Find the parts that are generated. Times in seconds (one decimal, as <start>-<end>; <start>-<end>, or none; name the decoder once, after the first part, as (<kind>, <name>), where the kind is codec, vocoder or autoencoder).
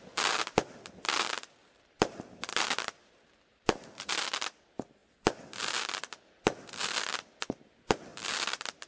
1.6-2.2 (vocoder, BigVGAN v2); 3.0-4.1